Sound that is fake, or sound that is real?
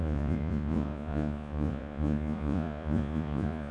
fake